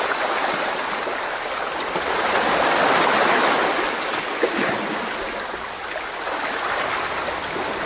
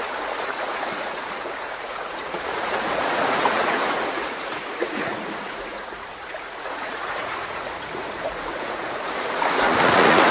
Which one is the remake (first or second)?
second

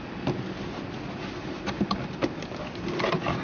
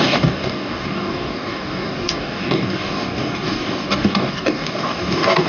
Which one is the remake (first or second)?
second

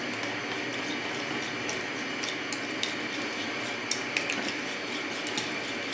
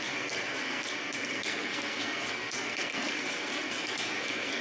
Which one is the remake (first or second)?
second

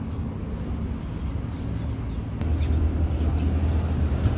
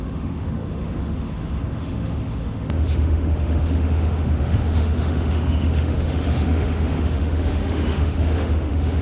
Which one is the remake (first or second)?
second